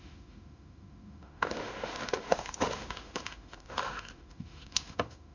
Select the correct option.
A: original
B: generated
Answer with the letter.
B